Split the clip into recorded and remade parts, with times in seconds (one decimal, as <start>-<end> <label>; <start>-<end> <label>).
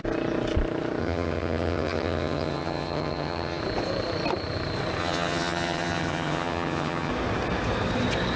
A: 0.0-1.0 recorded; 1.0-3.6 remade; 3.6-5.0 recorded; 5.0-7.1 remade; 7.1-8.4 recorded